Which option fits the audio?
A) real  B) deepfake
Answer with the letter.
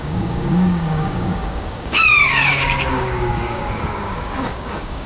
B